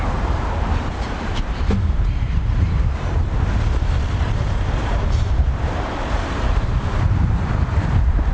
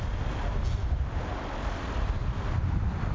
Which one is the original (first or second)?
second